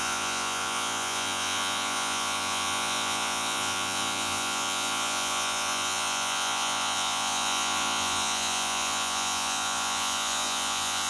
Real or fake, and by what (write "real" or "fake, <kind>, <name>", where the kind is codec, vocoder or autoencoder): fake, vocoder, Vocos